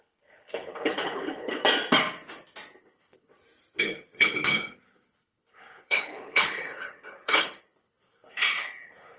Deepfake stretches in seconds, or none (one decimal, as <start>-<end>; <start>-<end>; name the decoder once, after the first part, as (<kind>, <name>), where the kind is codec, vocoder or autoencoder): 0.0-1.6 (codec, HILCodec); 2.8-3.3; 3.8-9.2